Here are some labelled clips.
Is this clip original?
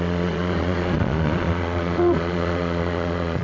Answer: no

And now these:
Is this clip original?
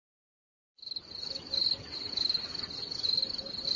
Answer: yes